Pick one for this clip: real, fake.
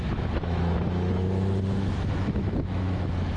fake